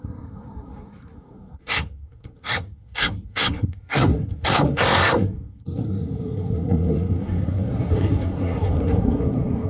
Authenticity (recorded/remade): remade